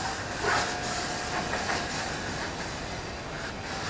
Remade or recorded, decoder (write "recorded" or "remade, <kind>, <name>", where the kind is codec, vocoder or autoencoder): recorded